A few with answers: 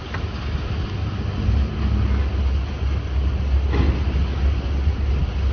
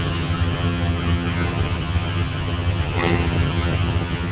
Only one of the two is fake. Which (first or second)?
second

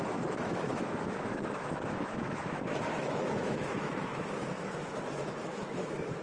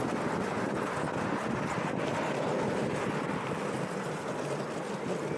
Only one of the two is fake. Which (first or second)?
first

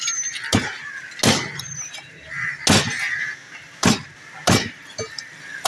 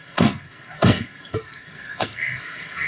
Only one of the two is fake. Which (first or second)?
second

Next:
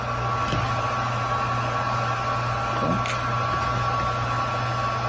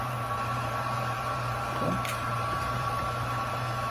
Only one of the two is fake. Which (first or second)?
second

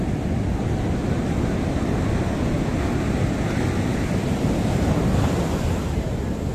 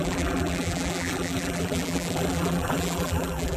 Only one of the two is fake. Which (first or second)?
second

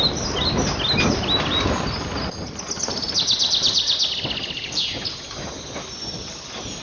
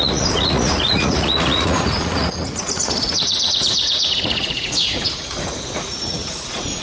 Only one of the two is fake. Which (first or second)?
second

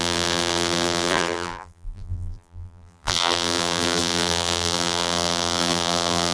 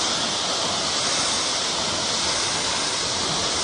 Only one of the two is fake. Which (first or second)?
first